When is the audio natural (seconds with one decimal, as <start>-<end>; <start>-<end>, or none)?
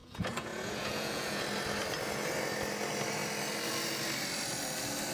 1.4-5.1